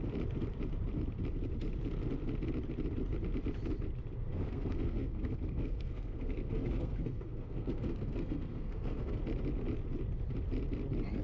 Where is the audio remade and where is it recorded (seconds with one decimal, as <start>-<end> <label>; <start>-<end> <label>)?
0.0-4.3 recorded; 4.3-9.2 remade; 9.2-11.2 recorded